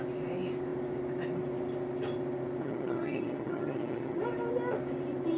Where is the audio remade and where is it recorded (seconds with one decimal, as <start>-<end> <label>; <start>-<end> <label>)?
0.0-2.6 recorded; 2.6-4.2 remade; 4.2-5.4 recorded